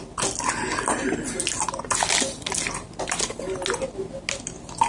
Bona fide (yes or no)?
yes